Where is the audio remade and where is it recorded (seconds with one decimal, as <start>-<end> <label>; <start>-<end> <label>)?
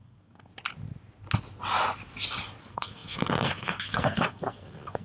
0.0-0.5 remade; 0.5-2.6 recorded; 2.6-5.0 remade